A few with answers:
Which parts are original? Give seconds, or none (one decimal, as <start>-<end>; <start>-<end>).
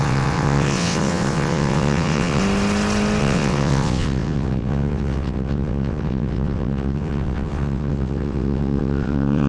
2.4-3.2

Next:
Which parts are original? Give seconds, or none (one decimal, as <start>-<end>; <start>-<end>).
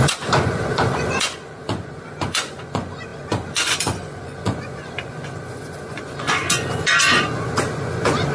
none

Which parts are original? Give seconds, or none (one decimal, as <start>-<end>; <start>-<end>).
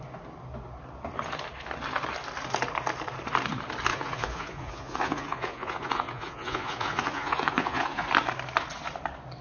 0.0-3.9; 8.1-9.4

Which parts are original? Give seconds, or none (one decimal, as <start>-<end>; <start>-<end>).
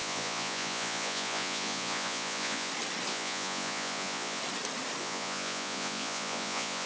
2.7-3.1; 4.4-5.0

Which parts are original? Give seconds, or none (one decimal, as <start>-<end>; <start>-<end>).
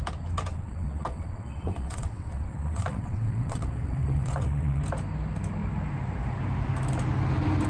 0.0-0.5; 4.8-7.7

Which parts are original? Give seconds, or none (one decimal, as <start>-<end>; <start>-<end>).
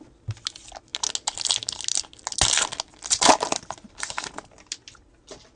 0.0-5.6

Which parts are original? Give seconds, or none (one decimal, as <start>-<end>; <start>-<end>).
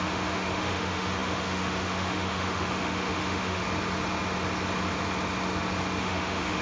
3.6-6.0